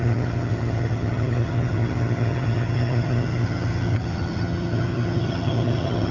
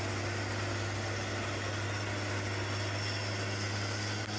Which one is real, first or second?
second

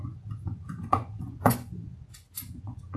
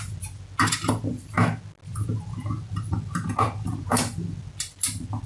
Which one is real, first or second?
second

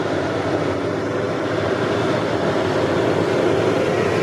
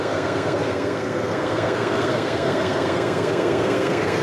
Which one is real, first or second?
first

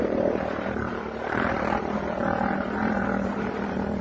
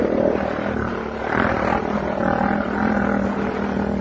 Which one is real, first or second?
second